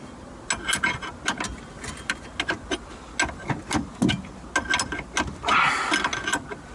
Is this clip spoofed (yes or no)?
no